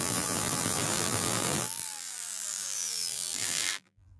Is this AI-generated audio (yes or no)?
yes